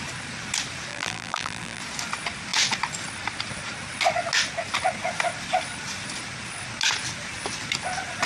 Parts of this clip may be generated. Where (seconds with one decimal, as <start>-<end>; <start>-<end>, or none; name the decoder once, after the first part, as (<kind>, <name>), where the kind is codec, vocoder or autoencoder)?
0.9-1.8 (vocoder, BigVGAN v2)